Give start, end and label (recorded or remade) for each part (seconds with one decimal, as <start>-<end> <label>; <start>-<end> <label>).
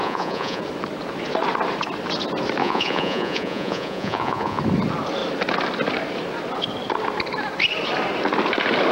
0.0-0.6 remade; 0.6-2.6 recorded; 2.6-4.6 remade; 4.6-8.9 recorded